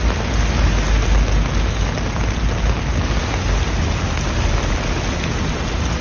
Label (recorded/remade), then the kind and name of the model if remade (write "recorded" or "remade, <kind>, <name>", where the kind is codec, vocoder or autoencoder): recorded